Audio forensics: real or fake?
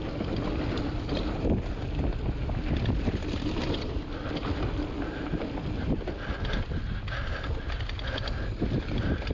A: real